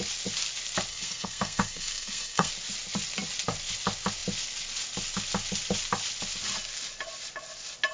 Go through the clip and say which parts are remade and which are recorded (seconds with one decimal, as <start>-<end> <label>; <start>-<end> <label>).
0.0-0.9 recorded; 0.9-2.5 remade; 2.5-7.9 recorded